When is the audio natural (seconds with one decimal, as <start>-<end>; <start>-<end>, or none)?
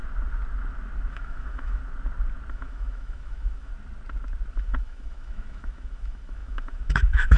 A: 0.0-1.1; 1.8-2.5; 3.7-4.5